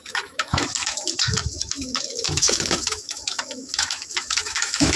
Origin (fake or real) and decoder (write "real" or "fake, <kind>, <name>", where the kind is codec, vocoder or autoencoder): fake, autoencoder, DAC-VAE